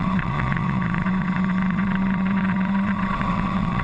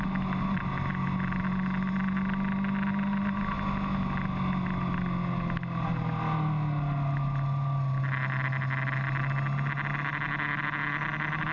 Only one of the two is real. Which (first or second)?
second